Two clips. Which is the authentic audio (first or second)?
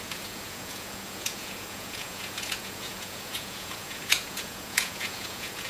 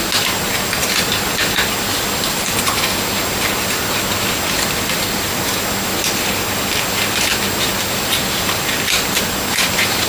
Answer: second